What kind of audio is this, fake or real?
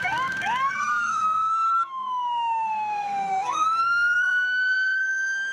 fake